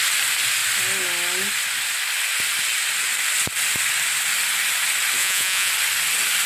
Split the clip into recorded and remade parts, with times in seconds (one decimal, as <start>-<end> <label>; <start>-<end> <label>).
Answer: 0.0-5.2 recorded; 5.2-5.7 remade; 5.7-6.5 recorded